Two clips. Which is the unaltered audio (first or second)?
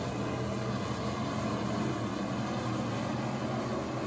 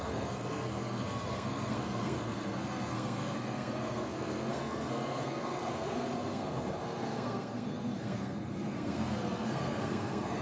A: first